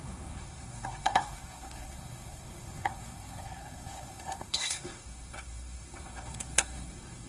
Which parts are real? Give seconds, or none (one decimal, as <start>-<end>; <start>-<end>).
none

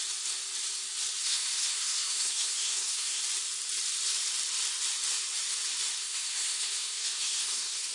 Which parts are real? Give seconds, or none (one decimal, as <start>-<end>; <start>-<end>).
0.0-1.2; 3.2-6.0

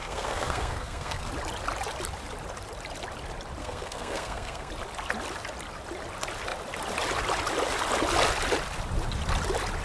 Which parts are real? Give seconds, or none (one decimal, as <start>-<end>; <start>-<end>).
1.3-3.6; 4.7-9.8

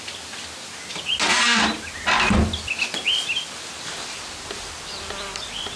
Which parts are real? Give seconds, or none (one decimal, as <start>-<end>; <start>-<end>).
0.0-5.8

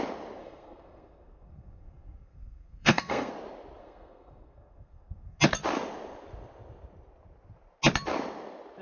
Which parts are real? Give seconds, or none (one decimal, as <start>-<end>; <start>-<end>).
0.0-0.4; 3.3-3.8; 5.4-8.8

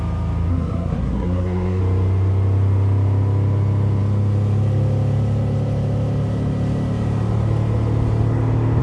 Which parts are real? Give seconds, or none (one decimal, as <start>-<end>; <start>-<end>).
0.0-0.5; 1.8-8.8

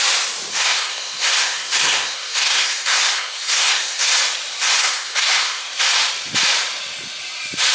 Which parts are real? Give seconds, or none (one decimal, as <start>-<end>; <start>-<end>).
0.0-0.5; 4.1-4.8; 5.6-7.7

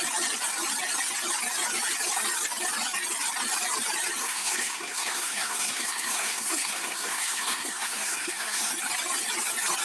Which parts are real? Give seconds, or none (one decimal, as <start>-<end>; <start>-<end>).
0.0-4.2; 8.7-9.8